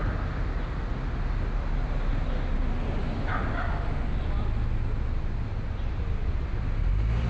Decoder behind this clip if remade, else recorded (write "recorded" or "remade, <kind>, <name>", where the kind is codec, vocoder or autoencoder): recorded